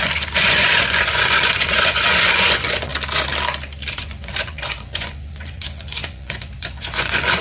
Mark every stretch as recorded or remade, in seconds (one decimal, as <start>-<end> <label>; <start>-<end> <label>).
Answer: 0.0-2.9 remade; 2.9-3.9 recorded; 3.9-7.4 remade